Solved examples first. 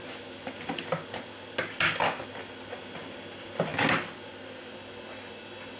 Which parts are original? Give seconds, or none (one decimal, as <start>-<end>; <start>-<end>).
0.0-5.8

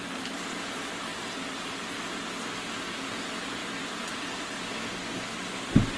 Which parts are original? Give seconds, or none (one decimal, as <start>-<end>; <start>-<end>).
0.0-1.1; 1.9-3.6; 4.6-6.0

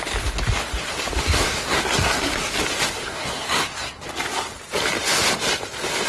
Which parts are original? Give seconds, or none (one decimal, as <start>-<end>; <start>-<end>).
0.0-1.2; 2.5-3.0; 4.0-6.1

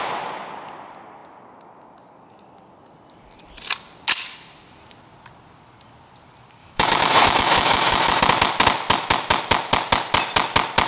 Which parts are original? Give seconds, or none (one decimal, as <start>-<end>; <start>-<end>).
0.0-6.6; 8.2-10.9

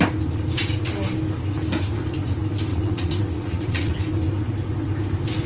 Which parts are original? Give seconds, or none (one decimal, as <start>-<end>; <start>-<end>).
0.0-2.7; 4.0-5.5